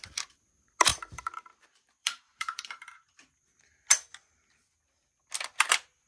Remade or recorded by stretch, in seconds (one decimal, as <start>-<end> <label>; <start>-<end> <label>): 0.0-0.9 recorded; 0.9-3.1 remade; 3.1-6.1 recorded